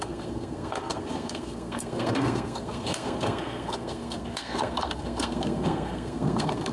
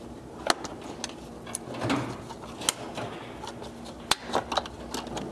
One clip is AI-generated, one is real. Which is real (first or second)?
second